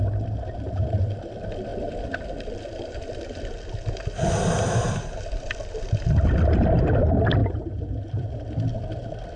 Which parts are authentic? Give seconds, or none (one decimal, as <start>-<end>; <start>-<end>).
0.0-7.4; 8.1-9.4